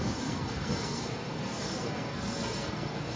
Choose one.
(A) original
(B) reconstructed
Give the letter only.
B